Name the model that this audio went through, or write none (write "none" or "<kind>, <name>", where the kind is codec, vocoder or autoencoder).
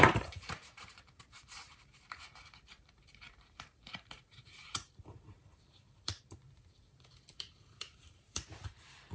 vocoder, BigVGAN v2